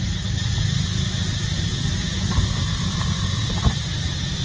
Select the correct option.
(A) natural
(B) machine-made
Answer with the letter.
A